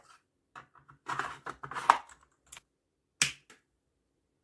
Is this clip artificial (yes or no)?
no